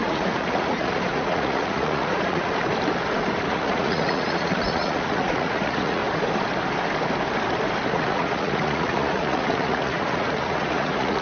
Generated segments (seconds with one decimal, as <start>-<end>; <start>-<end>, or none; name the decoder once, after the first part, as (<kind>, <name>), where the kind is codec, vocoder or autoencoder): 0.0-2.6 (vocoder, Vocos); 3.5-6.0; 7.9-11.2